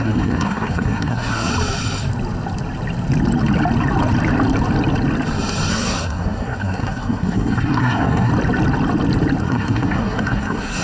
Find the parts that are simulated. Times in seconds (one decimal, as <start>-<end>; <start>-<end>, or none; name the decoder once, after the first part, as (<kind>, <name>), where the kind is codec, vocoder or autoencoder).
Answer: 0.0-1.5 (codec, SNAC); 5.7-8.3; 9.4-10.8